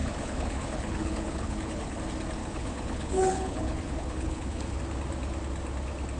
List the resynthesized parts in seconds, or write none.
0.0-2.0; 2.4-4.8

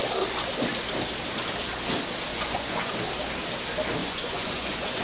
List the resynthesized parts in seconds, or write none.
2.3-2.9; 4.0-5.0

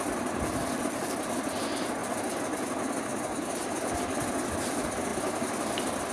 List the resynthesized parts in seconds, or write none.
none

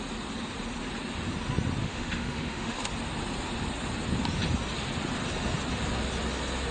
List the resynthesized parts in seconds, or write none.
1.8-2.9